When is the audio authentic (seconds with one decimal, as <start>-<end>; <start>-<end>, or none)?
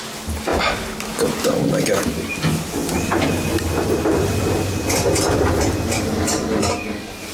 0.0-0.5; 2.4-7.3